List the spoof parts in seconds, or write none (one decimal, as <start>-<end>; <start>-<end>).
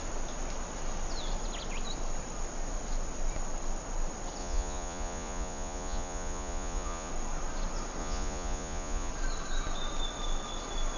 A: 4.4-7.1; 8.0-9.1